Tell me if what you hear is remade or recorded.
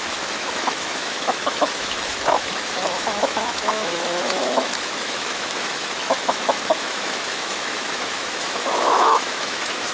remade